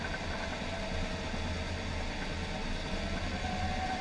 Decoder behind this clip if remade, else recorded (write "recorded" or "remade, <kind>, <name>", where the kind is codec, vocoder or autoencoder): recorded